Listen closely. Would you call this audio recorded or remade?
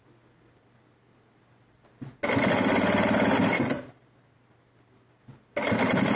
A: recorded